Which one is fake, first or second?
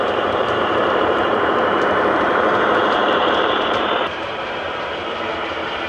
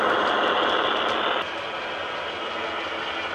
first